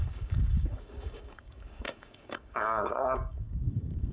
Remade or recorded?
remade